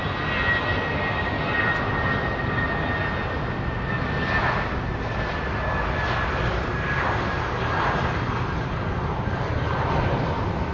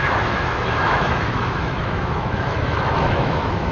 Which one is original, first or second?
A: first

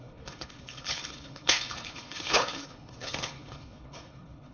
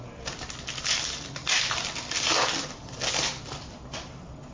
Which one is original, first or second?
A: second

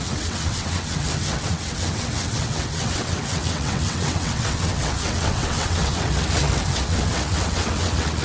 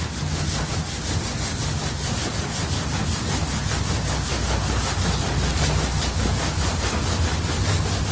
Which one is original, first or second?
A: second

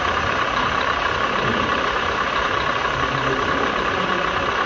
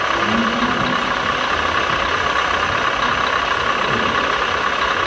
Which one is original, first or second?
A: second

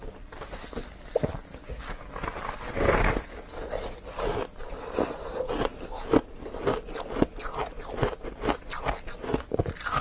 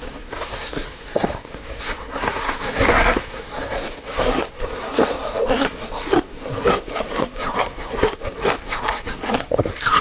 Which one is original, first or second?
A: first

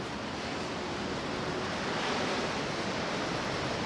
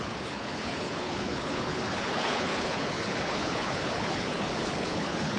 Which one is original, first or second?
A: first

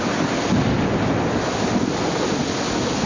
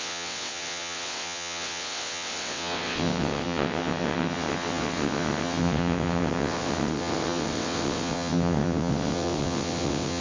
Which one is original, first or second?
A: first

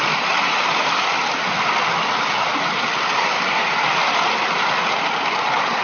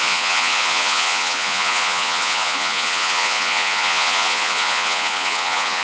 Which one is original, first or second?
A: first